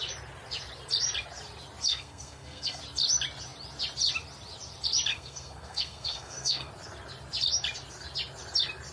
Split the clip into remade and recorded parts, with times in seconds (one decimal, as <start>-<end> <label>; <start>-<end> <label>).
0.0-1.9 recorded; 1.9-2.8 remade; 2.8-5.1 recorded; 5.1-6.7 remade; 6.7-8.9 recorded